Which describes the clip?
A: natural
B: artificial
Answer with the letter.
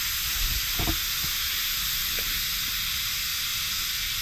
A